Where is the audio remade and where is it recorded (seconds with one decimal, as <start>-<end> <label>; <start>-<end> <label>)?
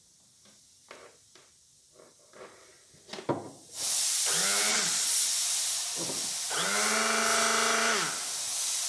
0.0-4.7 recorded; 4.7-5.3 remade; 5.3-8.9 recorded